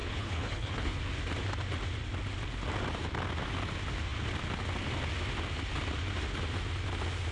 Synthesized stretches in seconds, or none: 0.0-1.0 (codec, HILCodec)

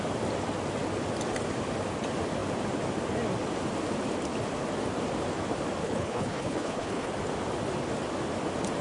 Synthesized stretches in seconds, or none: 5.8-7.1 (codec, HILCodec)

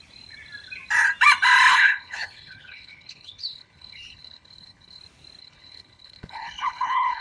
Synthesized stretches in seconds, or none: 1.7-5.0 (codec, HILCodec); 5.4-7.2

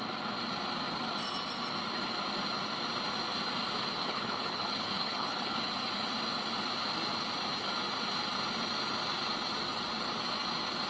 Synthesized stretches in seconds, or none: 4.0-5.6 (codec, HILCodec)